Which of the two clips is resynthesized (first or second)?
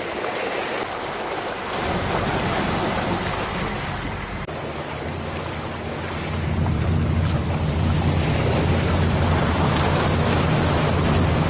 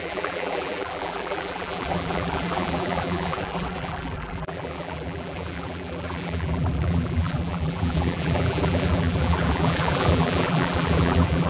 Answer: second